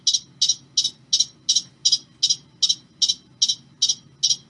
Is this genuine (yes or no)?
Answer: yes